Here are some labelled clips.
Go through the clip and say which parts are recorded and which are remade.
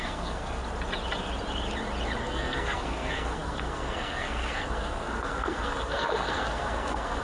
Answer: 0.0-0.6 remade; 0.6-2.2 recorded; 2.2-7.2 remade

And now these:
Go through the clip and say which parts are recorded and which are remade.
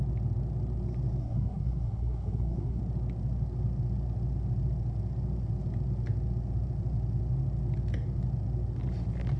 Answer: 0.0-1.2 recorded; 1.2-2.8 remade; 2.8-9.4 recorded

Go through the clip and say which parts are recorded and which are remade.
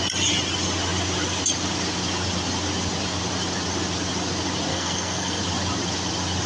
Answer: 0.0-4.7 recorded; 4.7-5.4 remade; 5.4-6.5 recorded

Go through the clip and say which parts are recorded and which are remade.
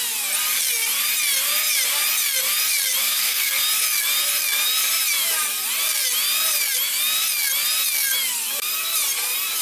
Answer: 0.0-3.0 recorded; 3.0-3.6 remade; 3.6-9.6 recorded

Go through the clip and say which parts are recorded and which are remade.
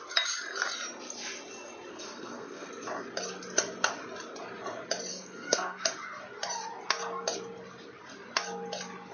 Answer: 0.0-1.9 recorded; 1.9-2.7 remade; 2.7-5.1 recorded; 5.1-5.9 remade; 5.9-9.1 recorded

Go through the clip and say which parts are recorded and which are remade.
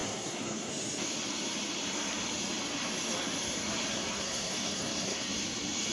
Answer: 0.0-0.7 remade; 0.7-3.9 recorded; 3.9-5.3 remade; 5.3-5.9 recorded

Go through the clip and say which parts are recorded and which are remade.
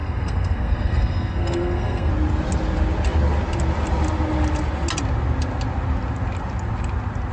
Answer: 0.0-2.1 remade; 2.1-7.3 recorded